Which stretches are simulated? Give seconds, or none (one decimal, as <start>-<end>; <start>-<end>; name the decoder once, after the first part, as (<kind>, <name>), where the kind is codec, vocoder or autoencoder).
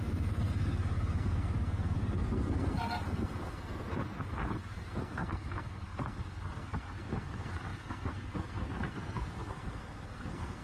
0.0-10.6 (codec, SNAC)